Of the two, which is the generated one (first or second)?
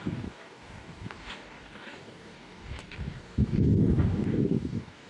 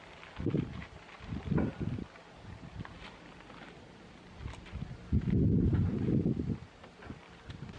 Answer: first